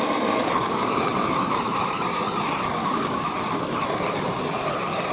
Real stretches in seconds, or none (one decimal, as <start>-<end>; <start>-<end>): 0.0-0.4; 1.1-2.8; 3.4-5.1